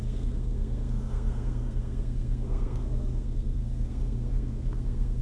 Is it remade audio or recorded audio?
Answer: remade